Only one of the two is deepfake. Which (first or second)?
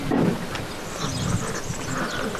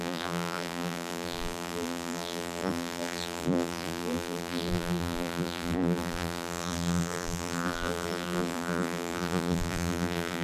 second